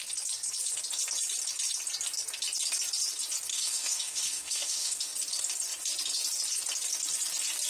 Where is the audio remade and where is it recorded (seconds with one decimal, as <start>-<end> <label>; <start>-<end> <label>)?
0.0-3.5 recorded; 3.5-5.1 remade; 5.1-7.7 recorded